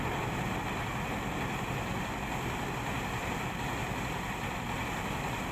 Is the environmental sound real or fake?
real